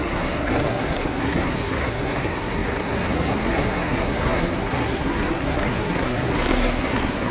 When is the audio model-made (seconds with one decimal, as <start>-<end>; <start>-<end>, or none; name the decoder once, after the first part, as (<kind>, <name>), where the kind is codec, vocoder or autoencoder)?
0.0-7.3 (codec, SNAC)